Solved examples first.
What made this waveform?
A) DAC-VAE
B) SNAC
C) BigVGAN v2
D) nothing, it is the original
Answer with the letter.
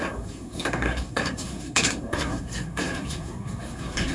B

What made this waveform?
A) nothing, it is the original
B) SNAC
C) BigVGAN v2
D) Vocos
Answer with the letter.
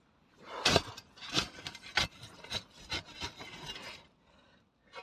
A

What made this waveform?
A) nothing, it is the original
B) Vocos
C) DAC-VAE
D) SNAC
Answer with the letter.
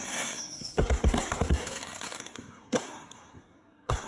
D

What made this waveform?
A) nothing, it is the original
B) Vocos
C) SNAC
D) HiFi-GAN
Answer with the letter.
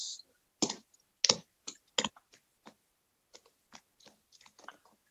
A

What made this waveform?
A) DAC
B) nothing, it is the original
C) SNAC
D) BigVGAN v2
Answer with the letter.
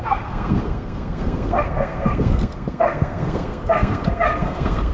C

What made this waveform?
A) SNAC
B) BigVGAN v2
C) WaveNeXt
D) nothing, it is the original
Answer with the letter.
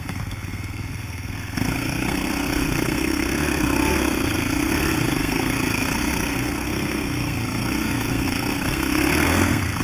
A